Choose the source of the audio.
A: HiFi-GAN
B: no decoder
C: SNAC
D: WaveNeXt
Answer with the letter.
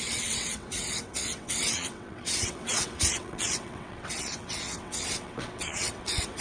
D